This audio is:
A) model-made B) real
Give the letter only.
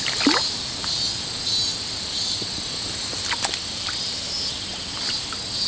B